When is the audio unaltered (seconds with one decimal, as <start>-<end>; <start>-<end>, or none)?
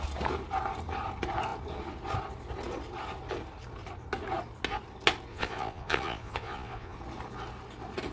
0.0-5.3; 7.0-8.1